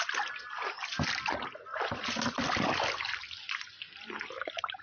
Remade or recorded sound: recorded